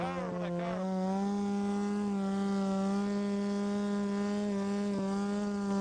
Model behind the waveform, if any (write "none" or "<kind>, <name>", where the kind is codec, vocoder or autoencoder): none